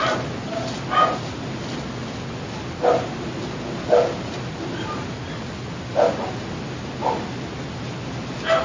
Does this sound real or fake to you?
real